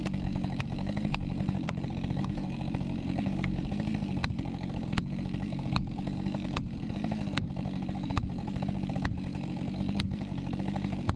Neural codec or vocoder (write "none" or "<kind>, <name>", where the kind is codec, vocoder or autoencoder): codec, SNAC